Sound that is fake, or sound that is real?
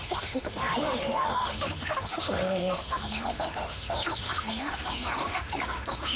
fake